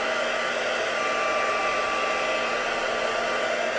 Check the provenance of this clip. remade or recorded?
recorded